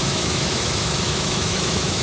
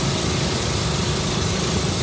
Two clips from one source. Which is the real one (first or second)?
second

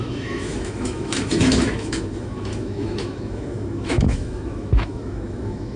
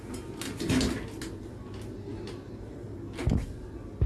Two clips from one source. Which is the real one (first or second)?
second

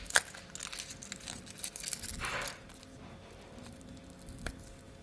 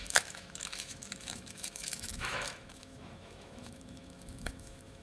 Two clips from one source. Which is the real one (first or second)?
first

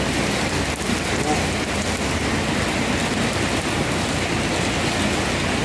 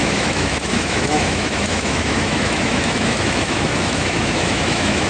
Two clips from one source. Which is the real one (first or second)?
first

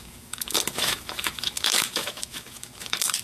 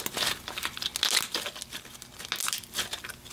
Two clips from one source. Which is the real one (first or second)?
second